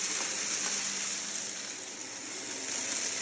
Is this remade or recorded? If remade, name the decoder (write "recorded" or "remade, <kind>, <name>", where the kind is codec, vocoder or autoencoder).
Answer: recorded